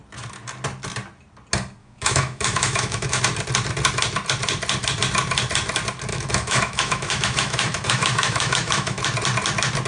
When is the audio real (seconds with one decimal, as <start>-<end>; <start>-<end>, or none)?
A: 0.0-1.8; 3.2-6.1; 9.0-9.9